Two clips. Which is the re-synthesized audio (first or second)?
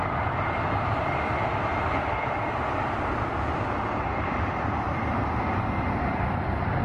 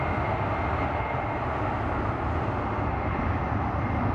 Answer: first